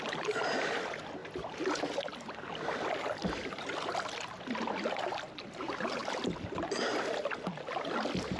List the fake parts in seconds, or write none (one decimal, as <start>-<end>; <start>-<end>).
none